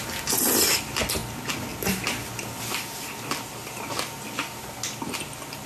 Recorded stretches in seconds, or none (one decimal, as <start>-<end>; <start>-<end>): 0.0-5.7